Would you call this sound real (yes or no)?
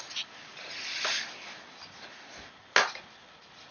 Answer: yes